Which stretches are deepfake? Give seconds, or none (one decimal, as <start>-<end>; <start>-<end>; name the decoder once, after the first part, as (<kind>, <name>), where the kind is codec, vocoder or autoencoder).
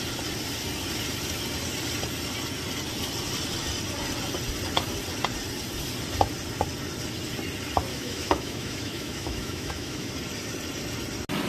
7.9-10.1 (autoencoder, DAC-VAE)